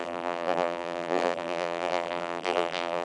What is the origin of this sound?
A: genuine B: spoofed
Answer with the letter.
B